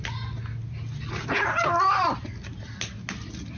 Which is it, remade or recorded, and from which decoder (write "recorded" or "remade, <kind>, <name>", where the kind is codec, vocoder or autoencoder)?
recorded